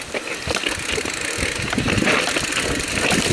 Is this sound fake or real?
real